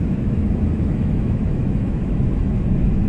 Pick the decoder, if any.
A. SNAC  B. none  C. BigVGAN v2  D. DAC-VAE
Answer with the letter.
D